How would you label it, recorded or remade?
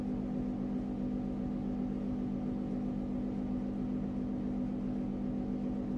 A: recorded